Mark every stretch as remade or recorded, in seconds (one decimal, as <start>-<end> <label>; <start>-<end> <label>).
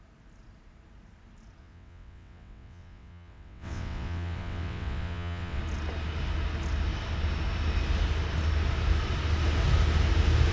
0.0-1.6 recorded; 1.6-5.6 remade; 5.6-10.5 recorded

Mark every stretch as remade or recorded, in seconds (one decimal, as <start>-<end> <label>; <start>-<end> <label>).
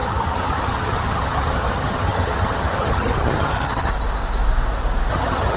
0.0-3.9 remade; 3.9-5.1 recorded; 5.1-5.6 remade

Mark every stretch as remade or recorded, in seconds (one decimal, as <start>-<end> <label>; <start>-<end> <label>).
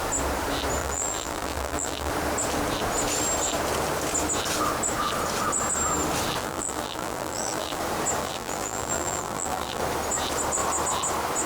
0.0-0.8 recorded; 0.8-2.1 remade; 2.1-6.4 recorded; 6.4-7.8 remade; 7.8-8.2 recorded; 8.2-9.8 remade; 9.8-11.5 recorded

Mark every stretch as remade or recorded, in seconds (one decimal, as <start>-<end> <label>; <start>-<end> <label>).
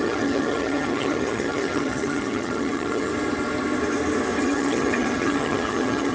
0.0-3.1 remade; 3.1-4.4 recorded; 4.4-6.1 remade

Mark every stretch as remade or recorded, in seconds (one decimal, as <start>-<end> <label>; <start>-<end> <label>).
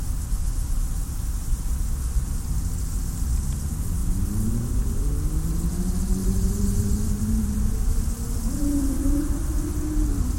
0.0-6.2 recorded; 6.2-9.8 remade; 9.8-10.4 recorded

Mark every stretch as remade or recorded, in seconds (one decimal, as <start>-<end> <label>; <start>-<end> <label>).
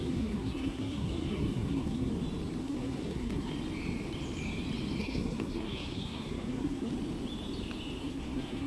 0.0-2.1 remade; 2.1-2.6 recorded; 2.6-3.5 remade; 3.5-5.0 recorded; 5.0-6.9 remade; 6.9-8.0 recorded; 8.0-8.7 remade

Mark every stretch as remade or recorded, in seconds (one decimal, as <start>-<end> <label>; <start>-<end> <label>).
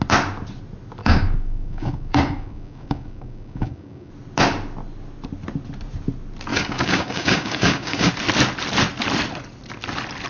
0.0-1.0 recorded; 1.0-4.1 remade; 4.1-6.5 recorded; 6.5-8.1 remade; 8.1-10.3 recorded